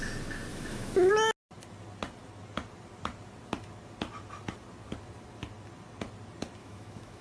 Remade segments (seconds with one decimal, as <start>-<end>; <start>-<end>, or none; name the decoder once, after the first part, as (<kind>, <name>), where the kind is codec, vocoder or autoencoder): 0.5-1.1 (autoencoder, DAC-VAE); 6.6-7.2